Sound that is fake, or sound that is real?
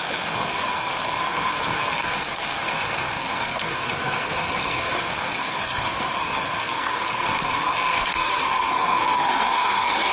fake